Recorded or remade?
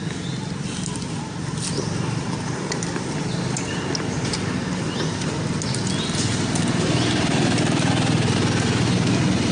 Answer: recorded